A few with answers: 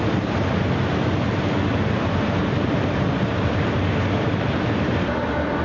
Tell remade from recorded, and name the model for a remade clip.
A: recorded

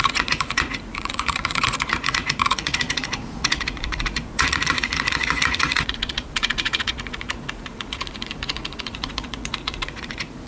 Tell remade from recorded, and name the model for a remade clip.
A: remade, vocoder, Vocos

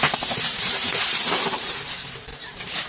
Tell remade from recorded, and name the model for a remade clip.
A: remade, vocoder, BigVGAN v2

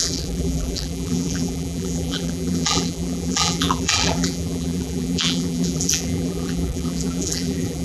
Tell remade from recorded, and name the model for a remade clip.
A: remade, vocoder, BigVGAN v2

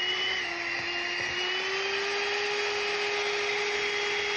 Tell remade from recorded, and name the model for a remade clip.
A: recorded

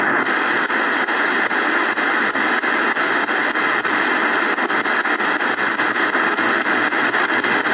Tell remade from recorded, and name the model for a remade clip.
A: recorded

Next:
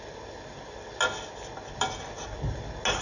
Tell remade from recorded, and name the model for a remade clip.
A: recorded